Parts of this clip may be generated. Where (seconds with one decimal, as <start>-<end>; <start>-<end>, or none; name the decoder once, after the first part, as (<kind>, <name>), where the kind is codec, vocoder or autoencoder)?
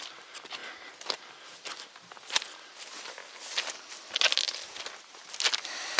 none